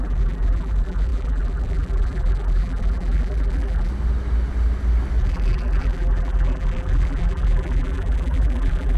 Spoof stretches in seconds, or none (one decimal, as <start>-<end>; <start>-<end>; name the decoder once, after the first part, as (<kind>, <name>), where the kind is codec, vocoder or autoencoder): 0.0-3.9 (vocoder, BigVGAN v2); 5.2-9.0

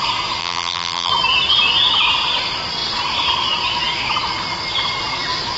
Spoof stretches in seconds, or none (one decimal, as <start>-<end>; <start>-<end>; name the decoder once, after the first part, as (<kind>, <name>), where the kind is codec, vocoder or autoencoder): 0.4-1.1 (vocoder, BigVGAN v2)

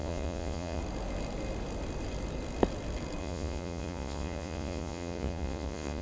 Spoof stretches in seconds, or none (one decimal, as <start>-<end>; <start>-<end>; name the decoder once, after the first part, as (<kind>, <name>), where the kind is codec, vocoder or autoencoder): 0.0-0.8 (vocoder, Vocos); 3.2-6.0